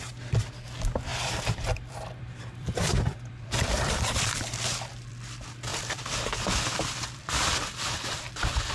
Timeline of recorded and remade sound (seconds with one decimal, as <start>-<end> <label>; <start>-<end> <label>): 0.0-1.1 recorded; 1.1-5.2 remade; 5.2-5.7 recorded; 5.7-8.7 remade